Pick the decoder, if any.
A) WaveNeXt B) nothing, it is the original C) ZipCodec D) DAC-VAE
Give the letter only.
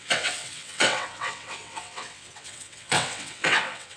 A